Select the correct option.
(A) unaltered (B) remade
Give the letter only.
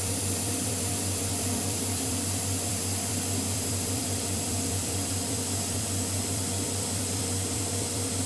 B